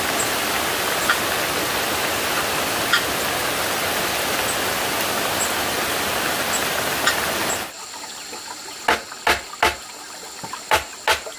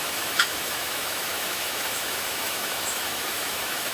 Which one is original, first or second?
first